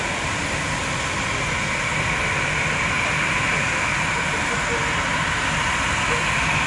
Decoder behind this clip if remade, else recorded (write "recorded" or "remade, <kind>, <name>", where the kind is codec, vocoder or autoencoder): recorded